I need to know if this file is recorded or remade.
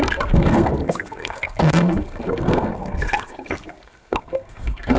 remade